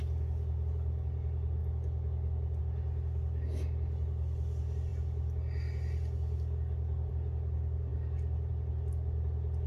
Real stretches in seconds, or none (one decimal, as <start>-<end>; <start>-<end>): 0.0-9.7